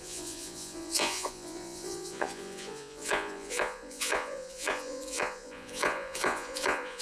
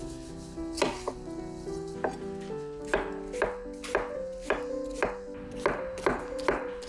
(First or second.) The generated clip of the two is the first